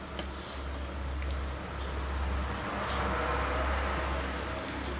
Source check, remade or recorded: recorded